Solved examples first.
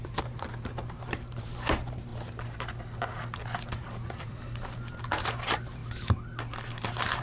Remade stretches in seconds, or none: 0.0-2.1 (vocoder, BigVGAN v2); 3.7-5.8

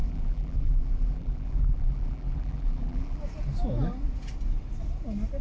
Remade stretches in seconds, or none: 0.0-3.2 (vocoder, BigVGAN v2)